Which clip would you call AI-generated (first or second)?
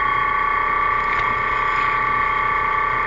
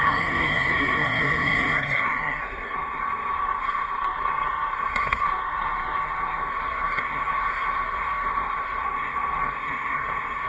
second